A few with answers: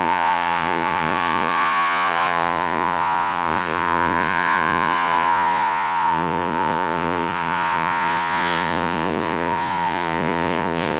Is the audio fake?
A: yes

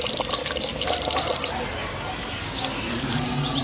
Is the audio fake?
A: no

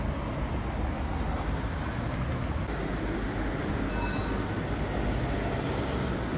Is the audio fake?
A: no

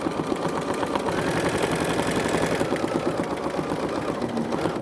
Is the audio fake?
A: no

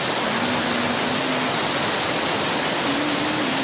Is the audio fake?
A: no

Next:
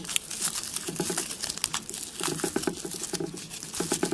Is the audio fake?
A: no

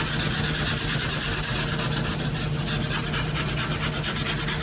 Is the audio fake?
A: no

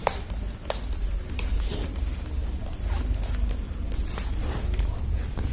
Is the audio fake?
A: no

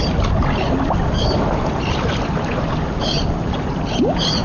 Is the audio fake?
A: no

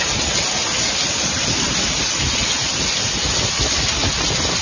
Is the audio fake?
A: no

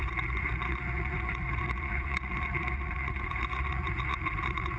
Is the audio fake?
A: yes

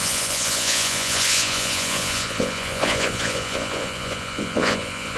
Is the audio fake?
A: yes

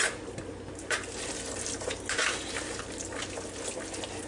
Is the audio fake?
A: no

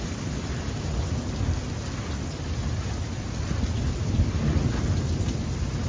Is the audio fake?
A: no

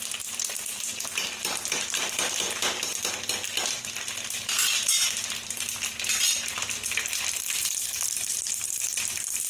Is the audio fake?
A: no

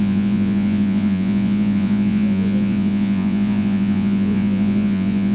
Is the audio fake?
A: yes